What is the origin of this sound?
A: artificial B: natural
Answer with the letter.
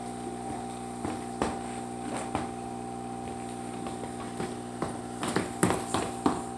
B